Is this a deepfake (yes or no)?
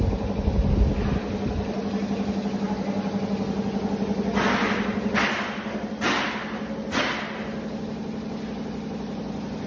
no